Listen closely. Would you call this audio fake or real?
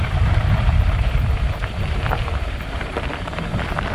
fake